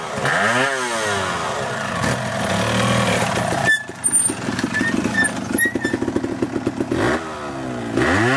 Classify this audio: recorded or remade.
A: recorded